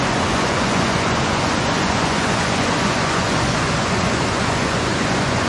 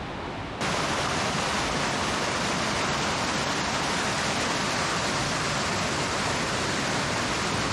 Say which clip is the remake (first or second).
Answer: first